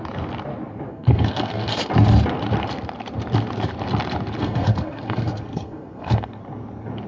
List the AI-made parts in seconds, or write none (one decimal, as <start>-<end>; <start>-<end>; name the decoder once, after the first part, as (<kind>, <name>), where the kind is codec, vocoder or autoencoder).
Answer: 0.9-1.9 (codec, SNAC); 4.4-6.4